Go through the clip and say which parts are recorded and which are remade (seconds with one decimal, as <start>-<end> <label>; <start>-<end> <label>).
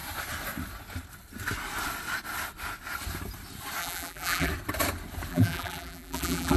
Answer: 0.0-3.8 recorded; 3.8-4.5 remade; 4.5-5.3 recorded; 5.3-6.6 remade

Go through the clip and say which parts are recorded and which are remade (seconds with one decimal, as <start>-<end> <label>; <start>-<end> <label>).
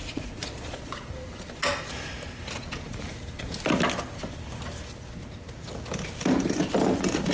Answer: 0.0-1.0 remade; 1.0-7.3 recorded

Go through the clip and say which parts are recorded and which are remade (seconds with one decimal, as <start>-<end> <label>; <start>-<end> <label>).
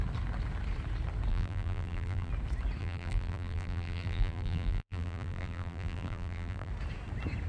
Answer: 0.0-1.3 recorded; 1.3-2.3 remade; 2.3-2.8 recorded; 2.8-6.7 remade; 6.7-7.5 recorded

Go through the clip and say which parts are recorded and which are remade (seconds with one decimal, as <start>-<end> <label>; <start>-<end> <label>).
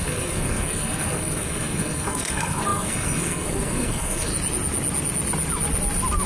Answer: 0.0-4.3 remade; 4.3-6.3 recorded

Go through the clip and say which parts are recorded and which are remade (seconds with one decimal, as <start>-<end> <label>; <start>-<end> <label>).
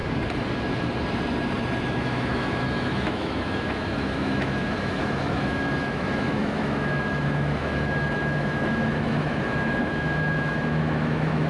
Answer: 0.0-1.9 recorded; 1.9-11.5 remade